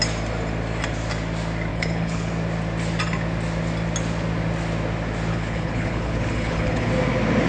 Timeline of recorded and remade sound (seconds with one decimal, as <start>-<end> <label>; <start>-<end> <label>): 0.0-1.7 recorded; 1.7-2.3 remade; 2.3-5.3 recorded; 5.3-6.9 remade; 6.9-7.5 recorded